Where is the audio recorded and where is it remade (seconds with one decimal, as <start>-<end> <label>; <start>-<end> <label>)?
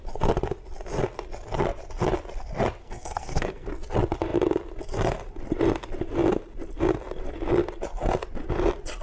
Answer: 0.0-2.8 recorded; 2.8-3.7 remade; 3.7-9.0 recorded